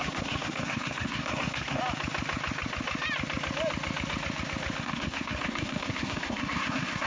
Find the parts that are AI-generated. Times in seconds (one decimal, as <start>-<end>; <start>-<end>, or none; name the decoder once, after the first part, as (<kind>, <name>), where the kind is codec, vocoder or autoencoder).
0.0-1.8 (codec, SNAC); 4.8-7.1